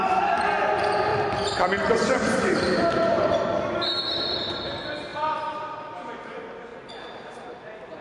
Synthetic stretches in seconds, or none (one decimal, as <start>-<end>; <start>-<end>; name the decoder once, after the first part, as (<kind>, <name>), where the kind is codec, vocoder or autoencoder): 1.1-3.4 (vocoder, BigVGAN v2)